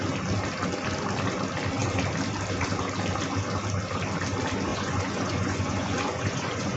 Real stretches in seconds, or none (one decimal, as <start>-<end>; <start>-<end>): 0.0-4.7